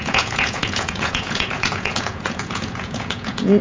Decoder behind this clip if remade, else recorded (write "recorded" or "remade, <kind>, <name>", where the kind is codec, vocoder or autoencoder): remade, vocoder, Vocos